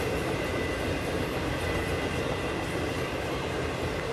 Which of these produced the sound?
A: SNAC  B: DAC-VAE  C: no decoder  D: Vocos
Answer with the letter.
C